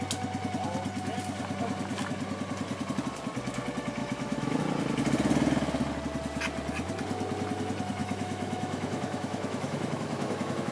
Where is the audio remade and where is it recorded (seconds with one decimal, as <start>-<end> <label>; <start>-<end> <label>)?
0.0-4.0 recorded; 4.0-4.6 remade; 4.6-8.0 recorded; 8.0-10.7 remade